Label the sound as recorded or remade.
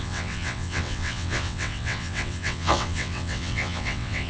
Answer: remade